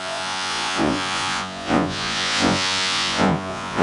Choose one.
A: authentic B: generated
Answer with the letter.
B